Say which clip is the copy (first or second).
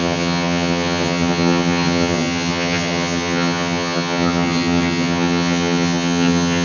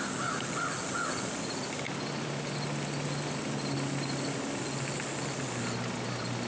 first